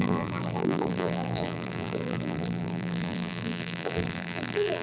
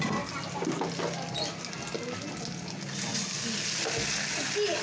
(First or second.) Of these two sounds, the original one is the second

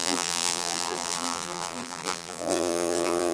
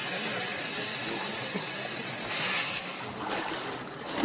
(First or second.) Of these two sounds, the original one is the second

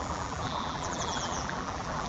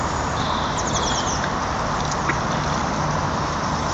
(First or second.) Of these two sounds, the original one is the second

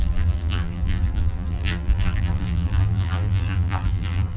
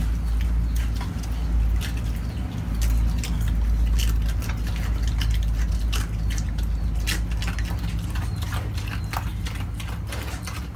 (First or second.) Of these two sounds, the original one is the second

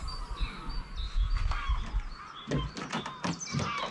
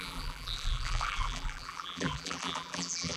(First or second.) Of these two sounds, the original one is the first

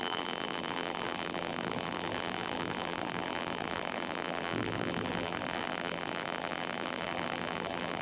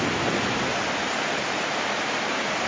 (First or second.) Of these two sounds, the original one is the second